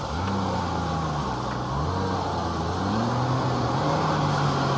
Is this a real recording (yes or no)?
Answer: yes